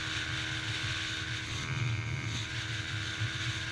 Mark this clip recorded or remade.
recorded